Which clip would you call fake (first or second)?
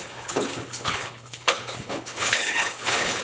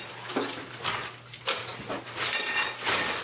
first